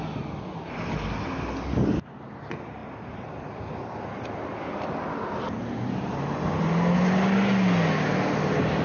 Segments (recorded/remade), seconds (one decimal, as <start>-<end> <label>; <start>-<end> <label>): 0.0-8.8 recorded